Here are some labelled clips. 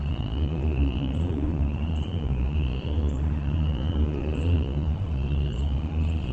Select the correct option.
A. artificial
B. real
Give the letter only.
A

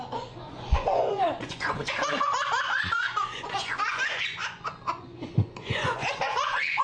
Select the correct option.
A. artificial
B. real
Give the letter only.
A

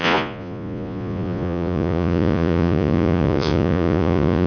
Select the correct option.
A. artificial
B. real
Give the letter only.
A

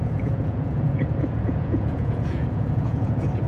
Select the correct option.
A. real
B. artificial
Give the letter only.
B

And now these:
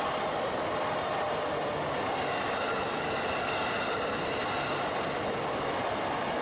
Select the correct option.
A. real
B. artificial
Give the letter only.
A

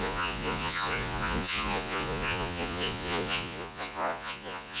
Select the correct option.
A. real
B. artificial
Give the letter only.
B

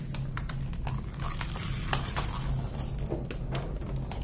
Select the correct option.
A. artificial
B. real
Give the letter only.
B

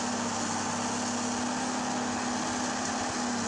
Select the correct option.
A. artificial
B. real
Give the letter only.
B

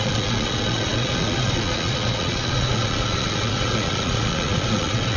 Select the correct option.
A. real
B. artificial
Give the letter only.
B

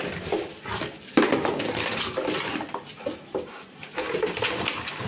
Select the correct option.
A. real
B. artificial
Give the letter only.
A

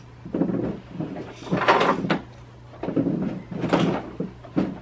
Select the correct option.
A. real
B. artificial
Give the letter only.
A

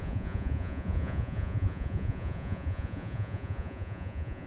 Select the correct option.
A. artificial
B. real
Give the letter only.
A